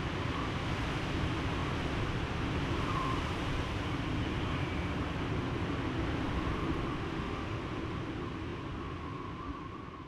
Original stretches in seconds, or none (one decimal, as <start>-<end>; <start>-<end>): 0.0-6.9; 7.6-10.1